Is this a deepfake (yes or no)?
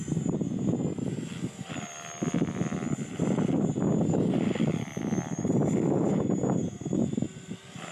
no